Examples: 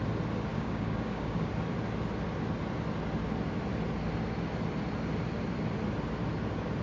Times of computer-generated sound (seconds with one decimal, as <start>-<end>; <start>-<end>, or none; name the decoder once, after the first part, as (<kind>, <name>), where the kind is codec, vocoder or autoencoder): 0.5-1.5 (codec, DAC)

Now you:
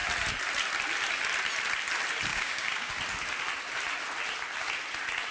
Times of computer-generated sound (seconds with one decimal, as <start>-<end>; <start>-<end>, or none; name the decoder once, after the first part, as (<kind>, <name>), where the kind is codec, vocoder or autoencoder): 2.3-2.9 (codec, DAC)

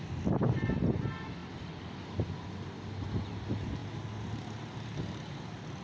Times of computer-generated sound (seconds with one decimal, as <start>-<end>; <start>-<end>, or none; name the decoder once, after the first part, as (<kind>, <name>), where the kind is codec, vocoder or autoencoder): none

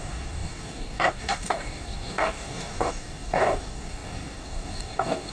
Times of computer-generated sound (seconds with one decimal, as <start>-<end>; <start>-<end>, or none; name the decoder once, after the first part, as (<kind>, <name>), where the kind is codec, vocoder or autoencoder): 0.0-5.3 (codec, DAC)

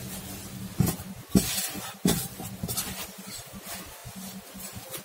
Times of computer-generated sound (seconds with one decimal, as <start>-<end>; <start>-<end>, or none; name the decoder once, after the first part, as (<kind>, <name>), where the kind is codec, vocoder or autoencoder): none